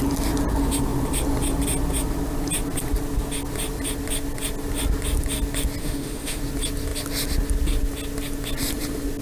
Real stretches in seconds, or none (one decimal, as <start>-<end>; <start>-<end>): 0.0-5.8; 6.4-9.2